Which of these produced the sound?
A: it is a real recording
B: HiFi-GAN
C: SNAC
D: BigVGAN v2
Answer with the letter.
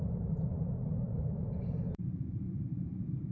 D